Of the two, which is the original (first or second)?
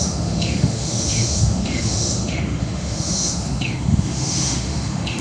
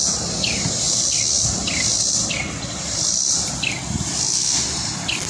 second